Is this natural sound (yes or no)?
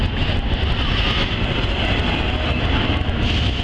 yes